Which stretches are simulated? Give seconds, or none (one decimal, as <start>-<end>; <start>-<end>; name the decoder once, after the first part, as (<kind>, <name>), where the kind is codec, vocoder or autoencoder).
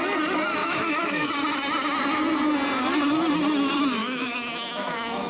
0.6-1.3 (autoencoder, DAC-VAE); 4.0-5.3